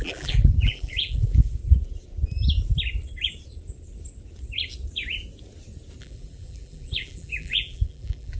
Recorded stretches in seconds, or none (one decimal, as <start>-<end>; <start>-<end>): 1.6-6.0